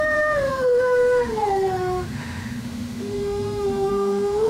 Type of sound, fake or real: fake